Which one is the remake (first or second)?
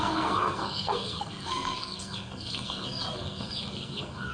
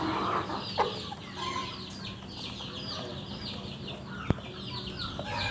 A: first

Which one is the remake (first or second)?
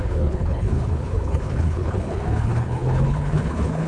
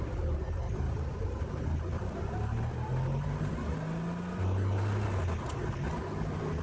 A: first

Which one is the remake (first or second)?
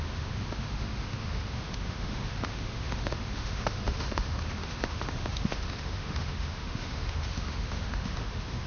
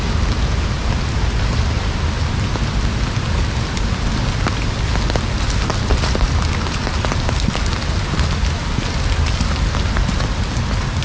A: first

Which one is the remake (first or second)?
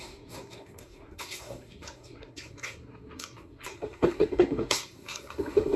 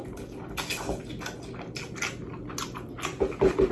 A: first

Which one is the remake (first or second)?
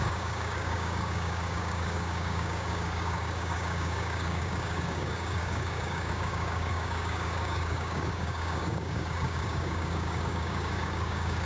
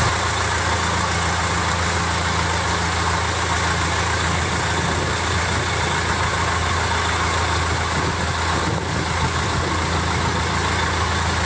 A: first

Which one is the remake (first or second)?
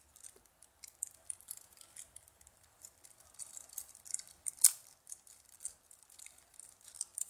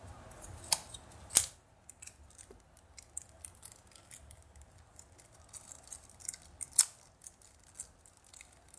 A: first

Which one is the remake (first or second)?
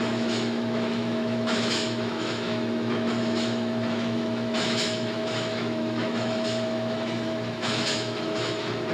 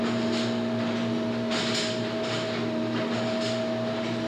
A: first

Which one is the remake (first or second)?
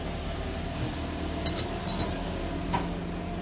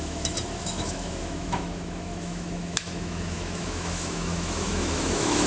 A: second